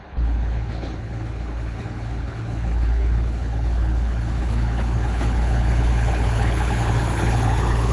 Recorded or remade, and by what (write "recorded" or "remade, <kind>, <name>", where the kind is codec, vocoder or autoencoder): remade, codec, HILCodec